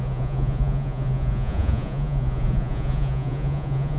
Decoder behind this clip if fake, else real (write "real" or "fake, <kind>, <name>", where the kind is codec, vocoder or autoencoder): fake, vocoder, Vocos